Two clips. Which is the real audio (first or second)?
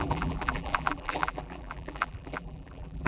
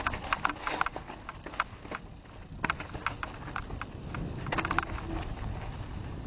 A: second